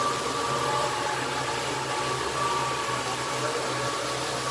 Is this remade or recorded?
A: recorded